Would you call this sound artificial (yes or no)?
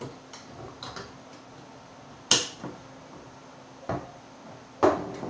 no